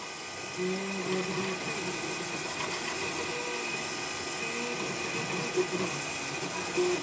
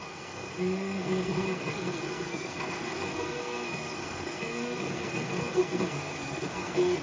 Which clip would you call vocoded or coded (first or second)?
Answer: second